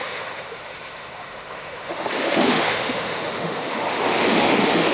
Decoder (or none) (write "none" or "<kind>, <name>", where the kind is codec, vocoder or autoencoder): autoencoder, DAC-VAE